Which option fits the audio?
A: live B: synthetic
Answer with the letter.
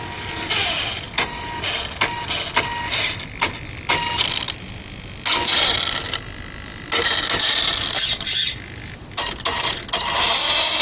A